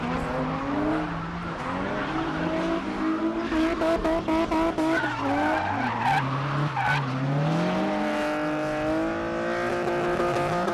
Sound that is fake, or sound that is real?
real